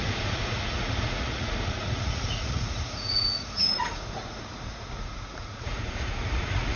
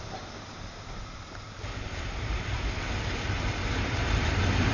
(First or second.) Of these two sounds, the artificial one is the first